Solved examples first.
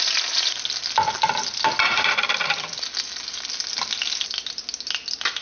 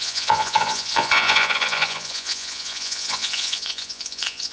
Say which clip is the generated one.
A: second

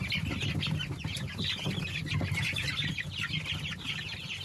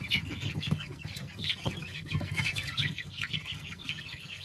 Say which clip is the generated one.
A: second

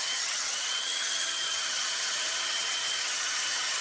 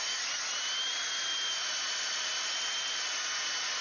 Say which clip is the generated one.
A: first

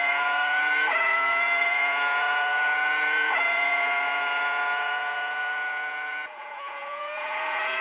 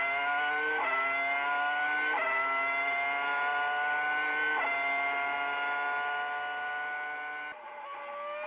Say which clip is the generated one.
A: first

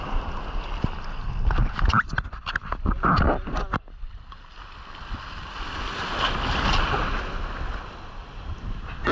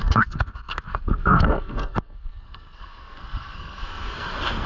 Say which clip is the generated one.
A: second